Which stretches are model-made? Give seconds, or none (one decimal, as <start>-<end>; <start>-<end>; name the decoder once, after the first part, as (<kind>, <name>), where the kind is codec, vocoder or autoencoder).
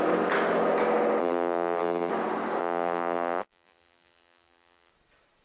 1.2-2.1 (vocoder, BigVGAN v2); 2.6-4.9